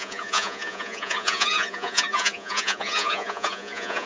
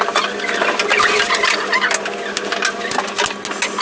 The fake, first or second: first